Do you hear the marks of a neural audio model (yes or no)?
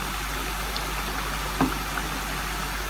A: no